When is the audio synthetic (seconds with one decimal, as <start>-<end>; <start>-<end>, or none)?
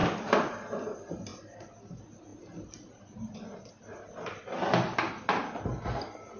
none